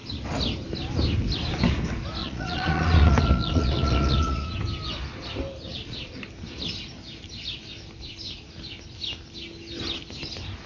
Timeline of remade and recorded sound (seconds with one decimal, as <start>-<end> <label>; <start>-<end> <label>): 0.0-2.2 recorded; 2.2-4.5 remade; 4.5-5.7 recorded; 5.7-6.2 remade; 6.2-10.7 recorded